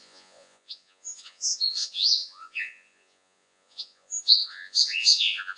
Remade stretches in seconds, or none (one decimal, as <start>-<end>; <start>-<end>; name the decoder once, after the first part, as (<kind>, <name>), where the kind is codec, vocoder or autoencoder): 0.0-5.6 (vocoder, Vocos)